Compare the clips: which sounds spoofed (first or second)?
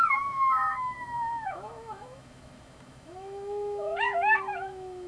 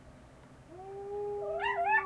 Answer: first